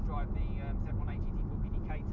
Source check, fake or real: real